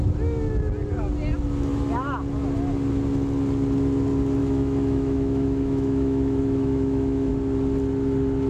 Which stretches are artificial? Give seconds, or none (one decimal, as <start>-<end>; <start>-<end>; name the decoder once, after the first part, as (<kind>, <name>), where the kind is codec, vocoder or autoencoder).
4.4-7.3 (autoencoder, DAC-VAE)